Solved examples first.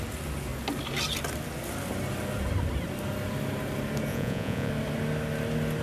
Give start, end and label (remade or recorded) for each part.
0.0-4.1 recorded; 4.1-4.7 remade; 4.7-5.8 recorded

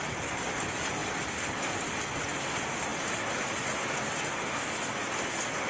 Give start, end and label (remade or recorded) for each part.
0.0-5.7 recorded

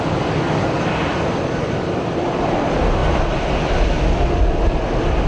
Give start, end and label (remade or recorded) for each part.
0.0-5.3 recorded

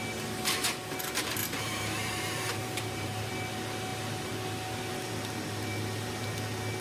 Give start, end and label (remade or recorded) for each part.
0.0-1.4 recorded; 1.4-3.3 remade; 3.3-6.8 recorded

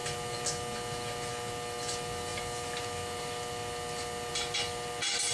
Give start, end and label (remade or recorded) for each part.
0.0-5.3 recorded